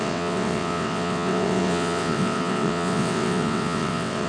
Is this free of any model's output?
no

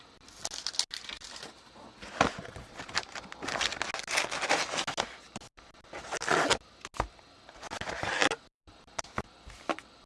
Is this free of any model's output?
yes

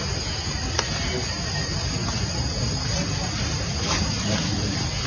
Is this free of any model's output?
yes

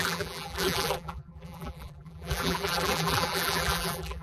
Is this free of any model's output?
no